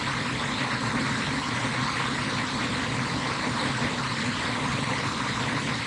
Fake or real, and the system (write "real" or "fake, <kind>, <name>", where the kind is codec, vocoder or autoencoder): real